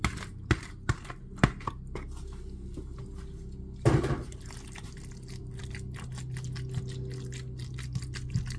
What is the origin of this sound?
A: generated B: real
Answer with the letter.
B